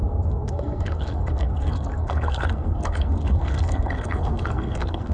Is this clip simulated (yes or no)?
yes